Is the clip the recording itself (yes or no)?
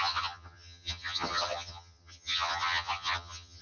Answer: no